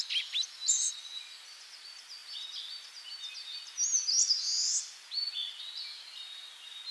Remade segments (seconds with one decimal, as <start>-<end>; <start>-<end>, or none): none